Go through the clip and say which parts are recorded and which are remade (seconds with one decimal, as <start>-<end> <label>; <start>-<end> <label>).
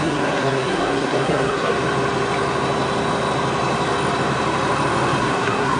0.0-1.7 remade; 1.7-5.2 recorded; 5.2-5.8 remade